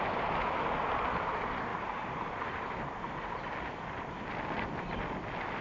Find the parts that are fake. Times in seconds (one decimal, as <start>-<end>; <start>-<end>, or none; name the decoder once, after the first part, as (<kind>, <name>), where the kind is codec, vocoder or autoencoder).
1.7-3.5 (vocoder, BigVGAN v2)